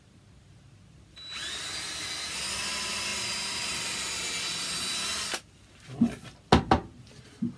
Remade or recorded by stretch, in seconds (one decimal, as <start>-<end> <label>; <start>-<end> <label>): 0.0-7.6 recorded